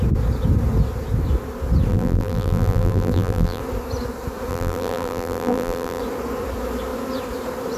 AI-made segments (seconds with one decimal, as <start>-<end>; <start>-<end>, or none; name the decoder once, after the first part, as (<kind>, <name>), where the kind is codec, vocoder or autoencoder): 1.9-3.6 (vocoder, BigVGAN v2); 4.5-6.0